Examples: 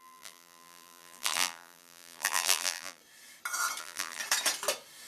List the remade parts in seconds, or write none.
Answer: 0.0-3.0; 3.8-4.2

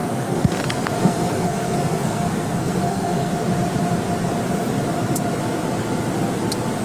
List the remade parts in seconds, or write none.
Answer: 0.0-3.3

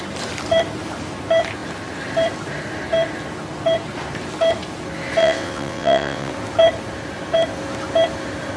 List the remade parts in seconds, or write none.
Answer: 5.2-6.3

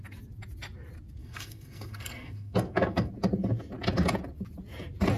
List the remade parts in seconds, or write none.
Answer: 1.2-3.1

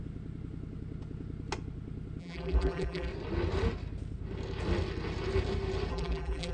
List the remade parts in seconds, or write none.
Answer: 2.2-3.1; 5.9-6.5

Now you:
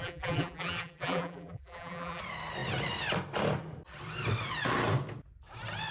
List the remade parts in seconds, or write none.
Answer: 0.0-2.2

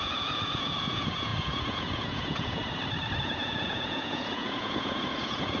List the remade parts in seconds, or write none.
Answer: 0.0-2.6; 3.2-5.6

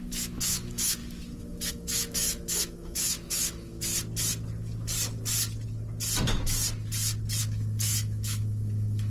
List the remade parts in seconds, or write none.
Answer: 0.0-3.9; 7.4-9.1